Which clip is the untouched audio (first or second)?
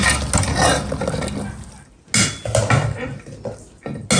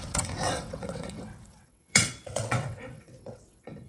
first